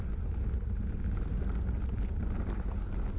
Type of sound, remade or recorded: recorded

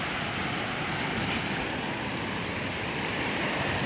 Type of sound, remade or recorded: recorded